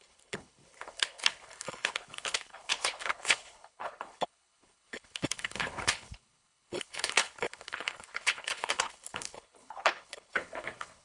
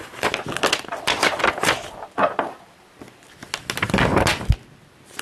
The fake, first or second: first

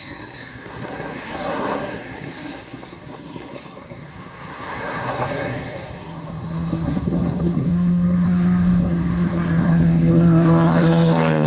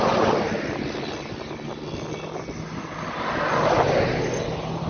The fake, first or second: first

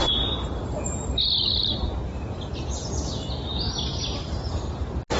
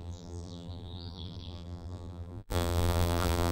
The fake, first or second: second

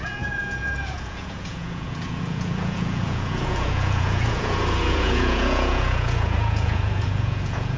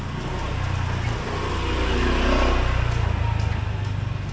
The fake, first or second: first